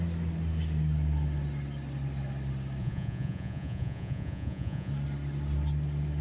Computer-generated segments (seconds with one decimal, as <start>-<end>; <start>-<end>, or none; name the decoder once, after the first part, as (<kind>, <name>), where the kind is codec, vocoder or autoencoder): 2.8-4.9 (vocoder, Vocos)